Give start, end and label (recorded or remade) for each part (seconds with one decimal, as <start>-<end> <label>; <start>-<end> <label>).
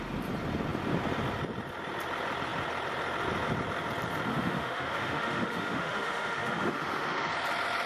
0.0-4.3 recorded; 4.3-7.3 remade; 7.3-7.9 recorded